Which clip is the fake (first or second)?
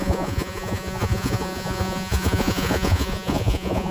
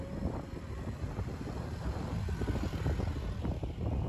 first